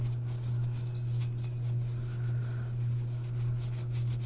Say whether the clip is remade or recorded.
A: recorded